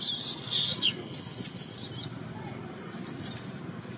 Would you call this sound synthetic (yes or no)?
no